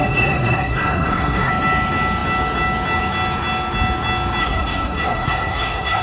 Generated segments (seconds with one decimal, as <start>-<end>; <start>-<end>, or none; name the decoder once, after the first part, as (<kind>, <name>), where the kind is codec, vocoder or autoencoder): 0.0-1.5 (codec, SNAC); 4.4-6.0